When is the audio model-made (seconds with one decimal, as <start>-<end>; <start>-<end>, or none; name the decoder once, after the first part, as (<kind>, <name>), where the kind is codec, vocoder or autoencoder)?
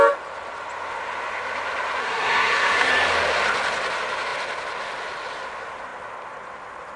2.0-2.9 (codec, SNAC)